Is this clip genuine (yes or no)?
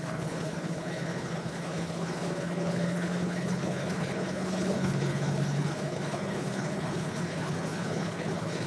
no